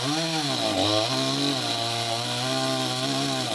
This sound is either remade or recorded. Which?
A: recorded